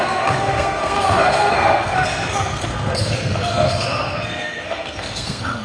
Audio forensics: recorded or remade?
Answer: remade